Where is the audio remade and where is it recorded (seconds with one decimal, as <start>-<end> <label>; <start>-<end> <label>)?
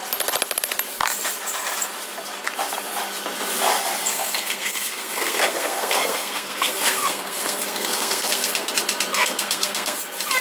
0.0-4.1 recorded; 4.1-8.7 remade; 8.7-9.1 recorded; 9.1-10.0 remade; 10.0-10.4 recorded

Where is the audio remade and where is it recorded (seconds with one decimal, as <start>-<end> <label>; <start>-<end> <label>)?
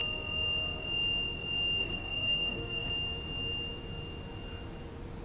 0.0-1.8 recorded; 1.8-2.9 remade; 2.9-5.2 recorded